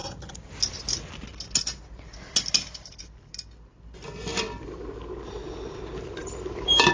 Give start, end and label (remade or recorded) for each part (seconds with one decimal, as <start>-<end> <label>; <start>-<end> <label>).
0.0-0.5 remade; 0.5-6.2 recorded; 6.2-6.9 remade